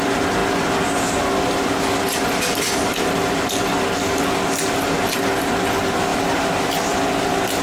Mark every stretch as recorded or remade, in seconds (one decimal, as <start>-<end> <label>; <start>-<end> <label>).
0.0-7.6 recorded